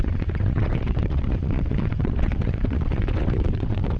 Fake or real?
fake